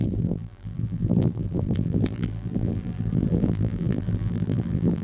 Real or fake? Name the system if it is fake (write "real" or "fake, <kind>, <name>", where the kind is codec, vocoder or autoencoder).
fake, vocoder, BigVGAN v2